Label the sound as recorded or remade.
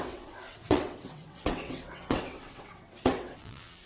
remade